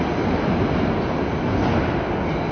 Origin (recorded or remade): recorded